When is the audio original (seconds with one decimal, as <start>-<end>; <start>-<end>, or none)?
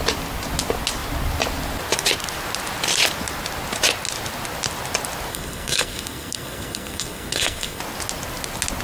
0.0-5.3; 7.8-8.8